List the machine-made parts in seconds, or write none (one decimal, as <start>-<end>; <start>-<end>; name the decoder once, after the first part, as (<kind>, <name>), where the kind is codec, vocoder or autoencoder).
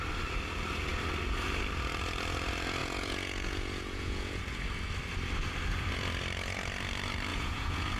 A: 2.8-4.4 (vocoder, Vocos); 7.3-8.0